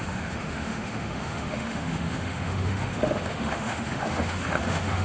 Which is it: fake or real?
fake